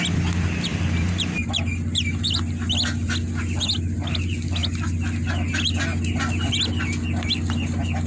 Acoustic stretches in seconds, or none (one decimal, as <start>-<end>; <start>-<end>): 0.0-0.7; 1.5-8.1